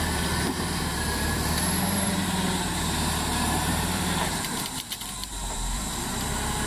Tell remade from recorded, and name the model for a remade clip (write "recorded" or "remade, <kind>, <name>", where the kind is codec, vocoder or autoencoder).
remade, vocoder, BigVGAN v2